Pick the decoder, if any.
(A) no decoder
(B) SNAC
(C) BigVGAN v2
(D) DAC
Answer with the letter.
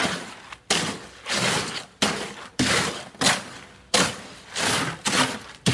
A